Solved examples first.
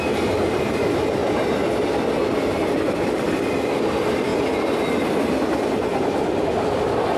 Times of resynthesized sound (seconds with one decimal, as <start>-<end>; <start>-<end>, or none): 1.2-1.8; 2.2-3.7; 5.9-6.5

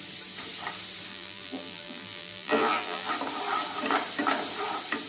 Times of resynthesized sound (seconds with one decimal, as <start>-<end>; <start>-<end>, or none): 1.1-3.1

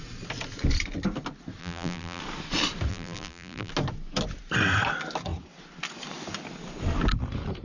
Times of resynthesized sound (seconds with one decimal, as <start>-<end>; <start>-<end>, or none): 1.6-2.2; 2.9-3.7